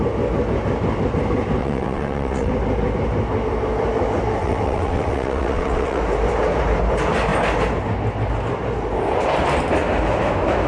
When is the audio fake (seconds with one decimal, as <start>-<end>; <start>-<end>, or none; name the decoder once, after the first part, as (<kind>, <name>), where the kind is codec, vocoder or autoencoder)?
1.6-2.5 (vocoder, WaveNeXt); 4.4-6.0